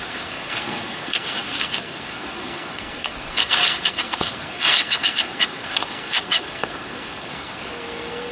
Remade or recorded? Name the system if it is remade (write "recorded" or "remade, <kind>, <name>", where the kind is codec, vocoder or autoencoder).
remade, codec, SNAC